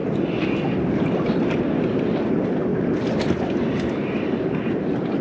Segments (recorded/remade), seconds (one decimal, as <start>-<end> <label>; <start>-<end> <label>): 0.0-5.2 recorded